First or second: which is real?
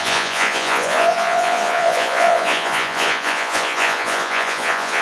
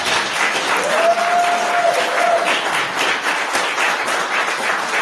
second